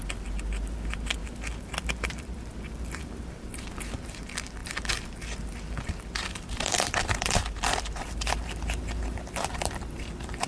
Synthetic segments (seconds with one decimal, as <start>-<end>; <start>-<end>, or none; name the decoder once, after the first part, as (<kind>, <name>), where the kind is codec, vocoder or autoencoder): 0.0-1.2 (vocoder, BigVGAN v2); 1.8-10.5